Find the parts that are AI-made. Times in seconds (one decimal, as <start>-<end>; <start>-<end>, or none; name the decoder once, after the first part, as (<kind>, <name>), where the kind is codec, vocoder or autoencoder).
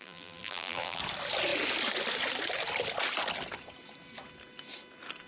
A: 0.0-1.0 (vocoder, BigVGAN v2)